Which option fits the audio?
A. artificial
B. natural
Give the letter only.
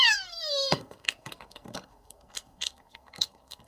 A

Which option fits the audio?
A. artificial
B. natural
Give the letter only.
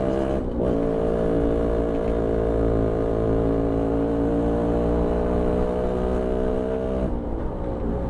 B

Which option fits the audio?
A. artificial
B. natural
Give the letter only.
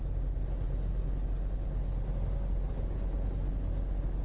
B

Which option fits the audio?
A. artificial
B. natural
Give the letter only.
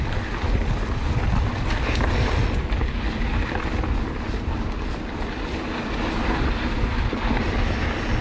B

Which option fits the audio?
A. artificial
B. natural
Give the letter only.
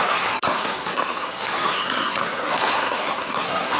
A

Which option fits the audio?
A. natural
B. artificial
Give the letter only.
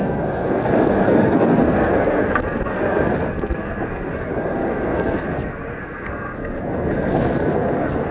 B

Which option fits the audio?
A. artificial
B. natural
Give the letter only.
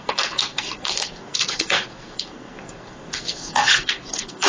A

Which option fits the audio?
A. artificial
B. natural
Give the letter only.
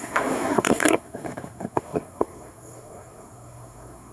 A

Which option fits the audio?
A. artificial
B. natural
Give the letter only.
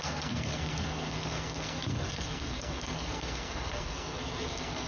A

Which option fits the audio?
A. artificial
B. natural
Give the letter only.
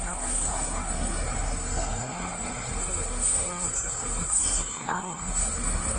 A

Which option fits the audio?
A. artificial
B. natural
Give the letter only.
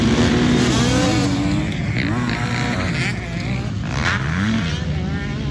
B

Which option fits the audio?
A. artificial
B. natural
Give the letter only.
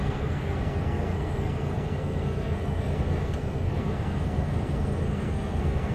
A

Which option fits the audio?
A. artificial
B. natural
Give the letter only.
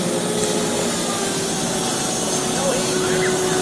B